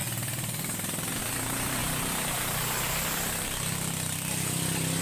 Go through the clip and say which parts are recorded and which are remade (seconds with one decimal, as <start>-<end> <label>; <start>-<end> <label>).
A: 0.0-1.2 remade; 1.2-1.8 recorded; 1.8-5.0 remade